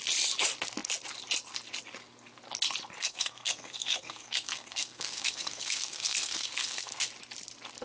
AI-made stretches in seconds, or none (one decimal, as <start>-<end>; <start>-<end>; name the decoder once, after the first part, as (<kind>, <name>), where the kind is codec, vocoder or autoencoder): 3.0-7.1 (codec, SNAC)